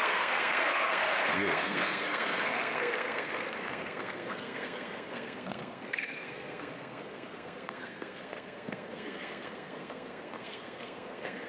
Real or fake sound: fake